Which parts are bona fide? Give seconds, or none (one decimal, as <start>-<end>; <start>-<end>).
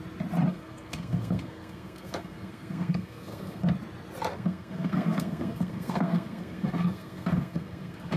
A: 0.0-0.5; 3.7-4.3